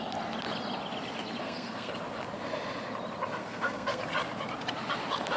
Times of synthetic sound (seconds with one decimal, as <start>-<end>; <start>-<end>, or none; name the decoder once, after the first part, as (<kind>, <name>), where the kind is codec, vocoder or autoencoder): 1.4-1.9 (codec, SNAC); 3.4-4.0